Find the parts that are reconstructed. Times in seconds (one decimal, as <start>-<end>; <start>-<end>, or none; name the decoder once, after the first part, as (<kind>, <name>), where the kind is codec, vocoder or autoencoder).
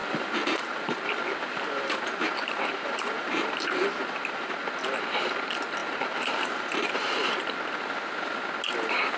0.0-4.5 (vocoder, BigVGAN v2); 5.8-7.3